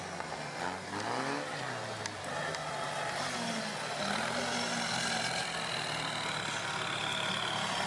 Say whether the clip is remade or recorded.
recorded